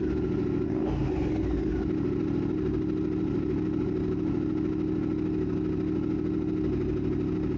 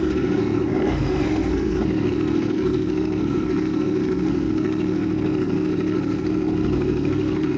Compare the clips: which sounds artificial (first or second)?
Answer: second